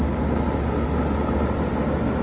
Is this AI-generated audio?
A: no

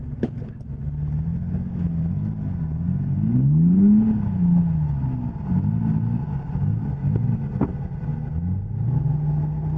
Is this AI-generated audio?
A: no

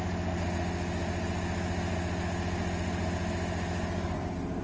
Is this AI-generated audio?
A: no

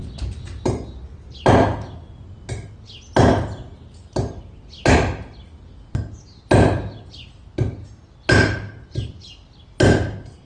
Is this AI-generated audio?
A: no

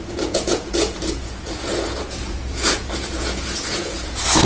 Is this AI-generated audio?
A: yes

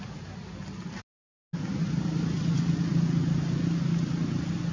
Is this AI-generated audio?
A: no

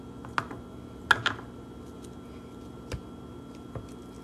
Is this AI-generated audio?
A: no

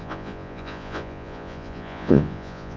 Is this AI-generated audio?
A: yes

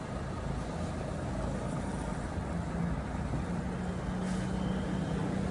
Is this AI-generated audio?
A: no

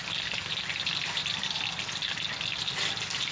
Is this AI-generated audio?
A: no